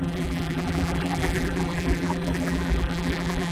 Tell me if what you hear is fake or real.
fake